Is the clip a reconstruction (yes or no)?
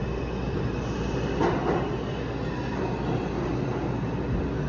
no